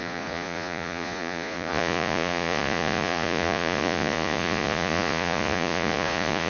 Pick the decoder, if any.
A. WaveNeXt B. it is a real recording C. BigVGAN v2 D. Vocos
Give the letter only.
D